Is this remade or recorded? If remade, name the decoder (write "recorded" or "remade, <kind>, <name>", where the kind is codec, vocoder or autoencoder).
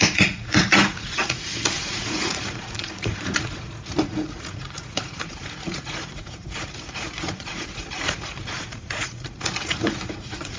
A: remade, vocoder, Vocos